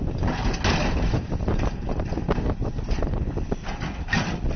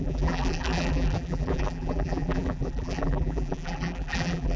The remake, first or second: second